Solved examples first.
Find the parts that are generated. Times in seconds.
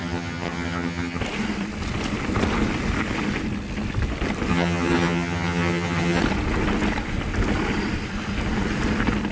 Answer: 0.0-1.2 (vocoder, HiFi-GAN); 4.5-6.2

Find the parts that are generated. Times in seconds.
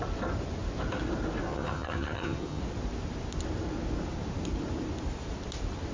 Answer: 1.5-2.6 (vocoder, HiFi-GAN)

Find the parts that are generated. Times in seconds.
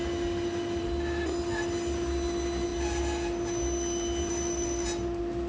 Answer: none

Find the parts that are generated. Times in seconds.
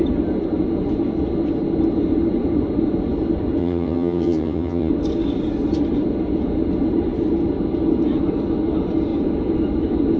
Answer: 3.6-4.9 (vocoder, HiFi-GAN)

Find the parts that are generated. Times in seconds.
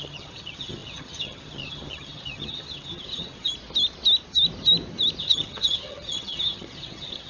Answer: 0.0-3.5 (vocoder, HiFi-GAN); 5.2-7.3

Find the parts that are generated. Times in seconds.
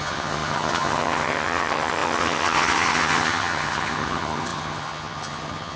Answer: 0.0-5.8 (vocoder, HiFi-GAN)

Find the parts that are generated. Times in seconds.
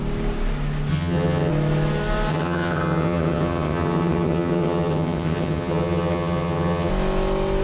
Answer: 0.9-1.5 (vocoder, HiFi-GAN); 2.3-6.9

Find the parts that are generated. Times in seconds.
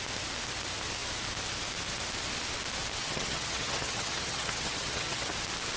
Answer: 3.0-5.3 (vocoder, HiFi-GAN)